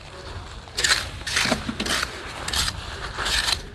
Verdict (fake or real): real